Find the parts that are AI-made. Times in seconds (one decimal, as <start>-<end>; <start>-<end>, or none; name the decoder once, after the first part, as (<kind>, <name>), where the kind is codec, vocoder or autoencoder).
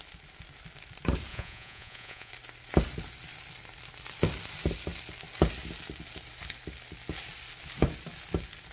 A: 1.3-2.3 (vocoder, Vocos)